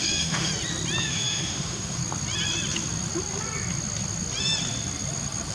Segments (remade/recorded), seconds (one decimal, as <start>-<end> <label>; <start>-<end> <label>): 0.0-0.5 remade; 0.5-1.0 recorded; 1.0-2.0 remade; 2.0-5.5 recorded